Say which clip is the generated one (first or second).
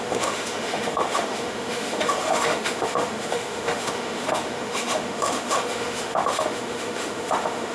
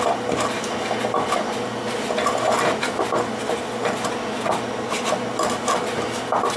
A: first